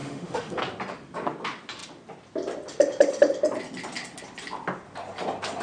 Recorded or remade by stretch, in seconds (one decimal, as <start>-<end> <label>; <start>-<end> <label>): 0.0-0.6 remade; 0.6-5.6 recorded